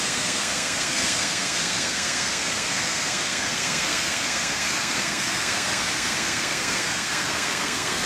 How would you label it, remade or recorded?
remade